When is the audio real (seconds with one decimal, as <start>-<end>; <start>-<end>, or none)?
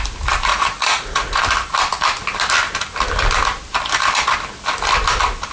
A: 0.0-0.5; 1.4-5.5